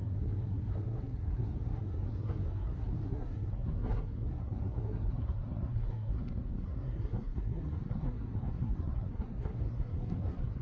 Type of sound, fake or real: fake